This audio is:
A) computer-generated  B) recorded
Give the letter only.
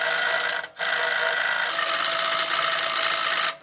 B